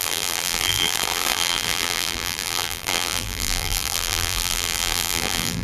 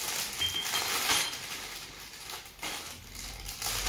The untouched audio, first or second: second